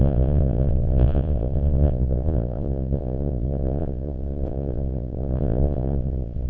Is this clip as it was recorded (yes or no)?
no